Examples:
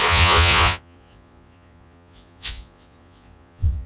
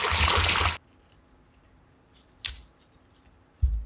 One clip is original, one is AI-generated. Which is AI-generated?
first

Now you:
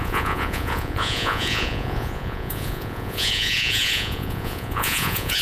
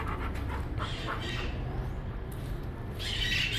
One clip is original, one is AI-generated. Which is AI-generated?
first